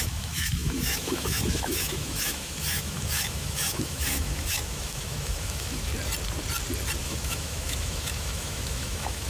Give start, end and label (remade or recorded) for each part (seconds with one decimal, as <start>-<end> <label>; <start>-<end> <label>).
0.0-5.9 remade; 5.9-7.0 recorded; 7.0-9.3 remade